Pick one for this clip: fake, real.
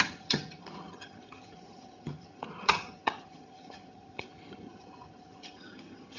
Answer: fake